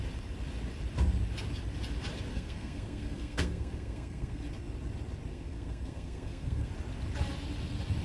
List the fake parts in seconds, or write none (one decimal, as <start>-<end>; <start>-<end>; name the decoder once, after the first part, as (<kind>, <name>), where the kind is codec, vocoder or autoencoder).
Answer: 2.3-4.4 (codec, SNAC); 5.3-6.7